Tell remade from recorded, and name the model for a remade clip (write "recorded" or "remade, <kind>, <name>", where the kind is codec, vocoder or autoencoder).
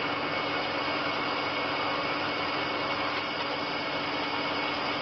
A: recorded